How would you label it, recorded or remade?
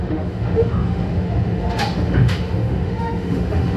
remade